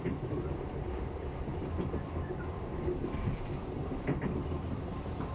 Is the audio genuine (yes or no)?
no